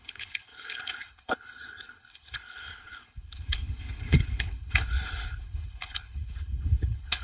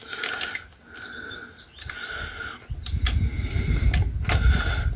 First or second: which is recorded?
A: second